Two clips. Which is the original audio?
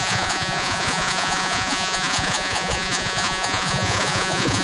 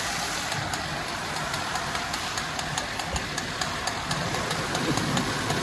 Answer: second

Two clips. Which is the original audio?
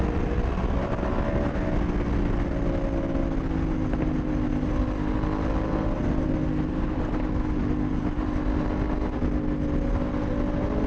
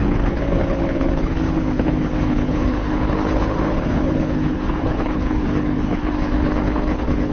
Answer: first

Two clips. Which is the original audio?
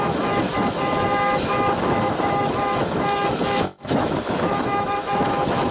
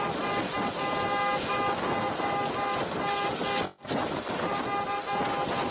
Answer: second